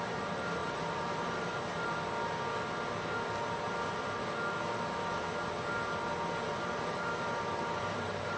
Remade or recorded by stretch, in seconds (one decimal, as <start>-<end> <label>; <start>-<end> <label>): 0.0-1.5 remade; 1.5-6.5 recorded; 6.5-8.4 remade